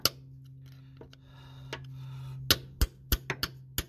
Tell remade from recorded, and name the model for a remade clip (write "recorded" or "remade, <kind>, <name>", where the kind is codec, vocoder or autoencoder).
recorded